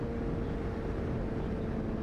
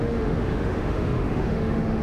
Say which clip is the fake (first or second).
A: second